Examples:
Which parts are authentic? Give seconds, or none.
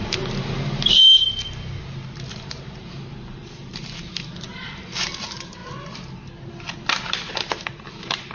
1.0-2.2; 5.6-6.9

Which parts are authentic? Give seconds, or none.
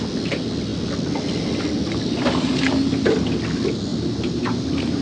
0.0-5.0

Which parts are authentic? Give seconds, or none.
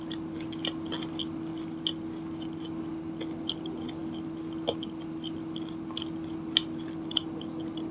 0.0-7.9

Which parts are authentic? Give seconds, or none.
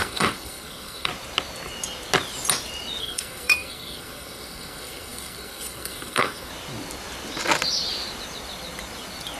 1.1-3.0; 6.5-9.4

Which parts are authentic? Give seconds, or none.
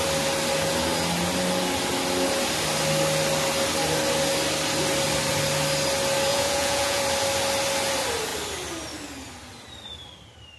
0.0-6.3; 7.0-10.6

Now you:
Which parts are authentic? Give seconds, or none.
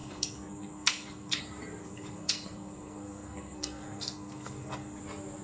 1.4-1.8; 5.0-5.4